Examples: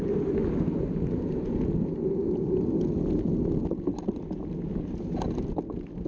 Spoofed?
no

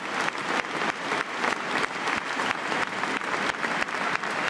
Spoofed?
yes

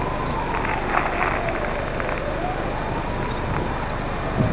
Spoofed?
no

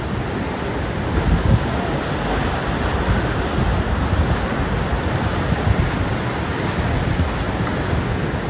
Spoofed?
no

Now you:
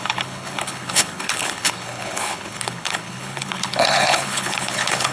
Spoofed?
yes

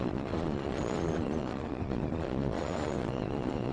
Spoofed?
yes